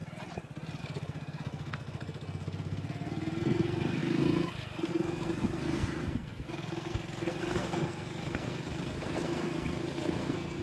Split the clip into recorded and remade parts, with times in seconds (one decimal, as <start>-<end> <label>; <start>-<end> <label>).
0.0-0.8 recorded; 0.8-10.6 remade